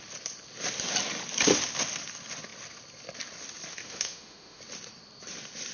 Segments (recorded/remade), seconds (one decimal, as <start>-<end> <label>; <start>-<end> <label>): 0.0-3.7 recorded; 3.7-4.6 remade; 4.6-5.7 recorded

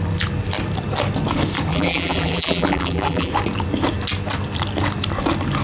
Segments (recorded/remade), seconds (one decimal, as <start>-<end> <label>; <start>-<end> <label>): 0.0-1.7 recorded; 1.7-3.3 remade; 3.3-5.6 recorded